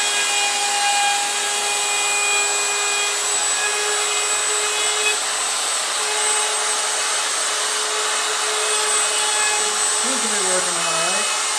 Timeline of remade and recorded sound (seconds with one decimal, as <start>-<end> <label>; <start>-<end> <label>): 0.0-11.6 recorded